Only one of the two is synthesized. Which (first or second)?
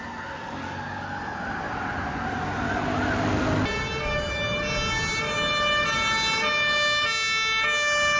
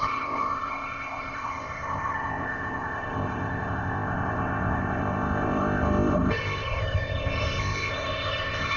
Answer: second